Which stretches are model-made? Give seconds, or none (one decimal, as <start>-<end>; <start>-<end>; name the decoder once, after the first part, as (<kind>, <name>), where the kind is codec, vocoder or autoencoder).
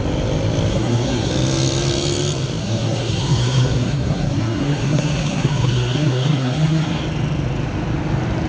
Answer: 0.7-1.3 (codec, SNAC); 2.6-7.0